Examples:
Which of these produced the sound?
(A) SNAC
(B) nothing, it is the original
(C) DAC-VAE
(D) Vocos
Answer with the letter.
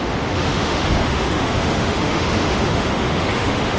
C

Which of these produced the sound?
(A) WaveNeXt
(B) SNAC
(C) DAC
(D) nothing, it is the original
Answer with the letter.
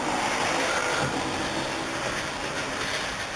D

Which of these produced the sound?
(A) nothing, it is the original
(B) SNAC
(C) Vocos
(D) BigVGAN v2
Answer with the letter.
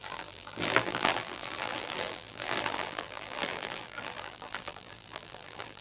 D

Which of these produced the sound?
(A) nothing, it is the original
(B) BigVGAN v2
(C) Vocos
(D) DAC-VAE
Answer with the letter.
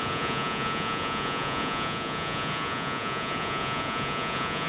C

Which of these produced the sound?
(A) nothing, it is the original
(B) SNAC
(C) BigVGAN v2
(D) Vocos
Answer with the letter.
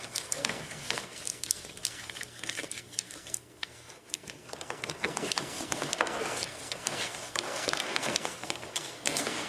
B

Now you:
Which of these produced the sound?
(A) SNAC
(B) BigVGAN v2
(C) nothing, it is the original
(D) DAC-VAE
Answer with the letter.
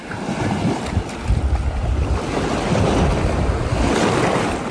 C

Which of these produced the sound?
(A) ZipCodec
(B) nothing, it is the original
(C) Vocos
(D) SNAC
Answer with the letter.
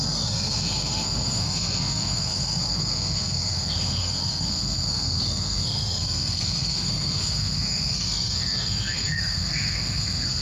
D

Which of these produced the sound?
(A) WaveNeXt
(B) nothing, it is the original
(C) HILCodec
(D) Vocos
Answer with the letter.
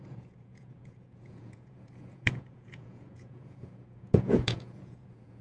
D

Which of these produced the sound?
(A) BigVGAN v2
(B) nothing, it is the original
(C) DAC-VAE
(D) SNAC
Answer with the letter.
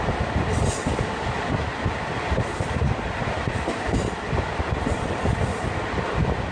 B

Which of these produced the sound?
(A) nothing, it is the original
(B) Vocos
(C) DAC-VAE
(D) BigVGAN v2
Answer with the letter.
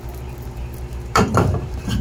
D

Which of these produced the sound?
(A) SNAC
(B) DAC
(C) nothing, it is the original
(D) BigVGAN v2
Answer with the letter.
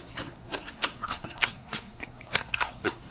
A